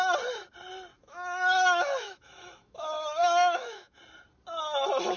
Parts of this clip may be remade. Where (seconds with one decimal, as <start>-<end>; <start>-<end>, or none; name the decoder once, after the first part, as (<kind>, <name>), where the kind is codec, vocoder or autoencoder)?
0.9-4.0 (autoencoder, DAC-VAE)